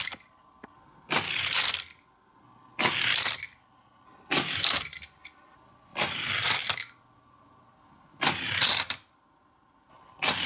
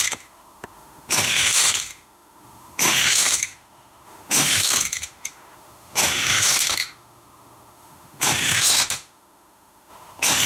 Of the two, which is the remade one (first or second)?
second